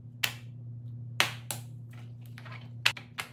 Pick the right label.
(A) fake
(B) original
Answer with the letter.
B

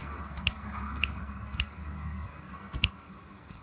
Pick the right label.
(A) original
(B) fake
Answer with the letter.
B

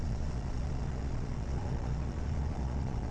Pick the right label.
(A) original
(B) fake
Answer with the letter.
B